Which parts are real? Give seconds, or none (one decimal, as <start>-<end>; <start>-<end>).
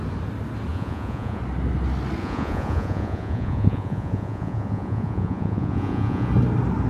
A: 0.0-0.7; 1.4-2.2; 6.3-6.9